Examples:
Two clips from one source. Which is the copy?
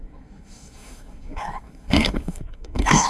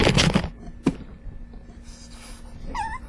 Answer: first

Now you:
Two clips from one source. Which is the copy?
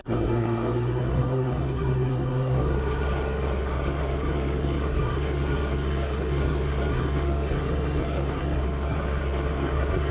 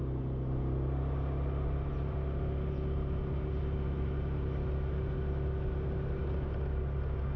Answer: first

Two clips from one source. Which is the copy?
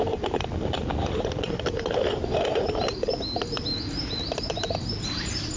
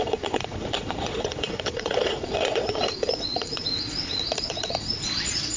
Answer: second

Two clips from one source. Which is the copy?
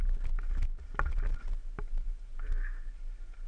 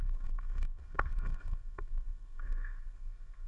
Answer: second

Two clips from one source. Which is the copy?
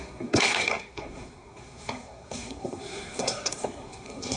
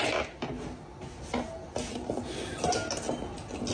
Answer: first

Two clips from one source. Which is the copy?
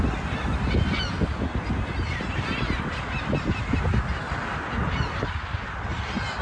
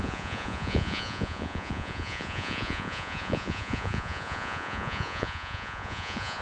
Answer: second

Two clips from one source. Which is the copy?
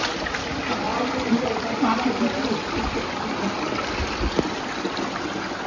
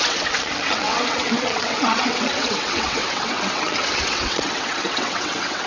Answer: second